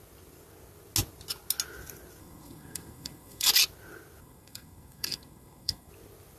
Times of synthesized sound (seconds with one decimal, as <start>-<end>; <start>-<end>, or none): 2.2-3.5; 4.2-5.9